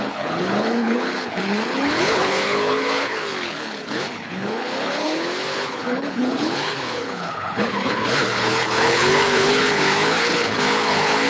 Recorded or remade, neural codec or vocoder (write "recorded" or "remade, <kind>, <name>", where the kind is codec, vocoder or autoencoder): remade, codec, HILCodec